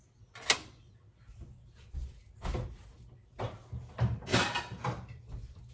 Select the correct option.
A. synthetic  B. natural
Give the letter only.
B